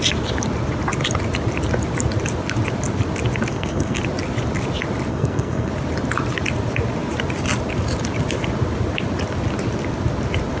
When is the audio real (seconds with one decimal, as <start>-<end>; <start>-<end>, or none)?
0.0-3.5; 4.0-5.1; 5.7-10.6